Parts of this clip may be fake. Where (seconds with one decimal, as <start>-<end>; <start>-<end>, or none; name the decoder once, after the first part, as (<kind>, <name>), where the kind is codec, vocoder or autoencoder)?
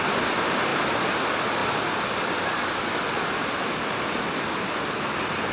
none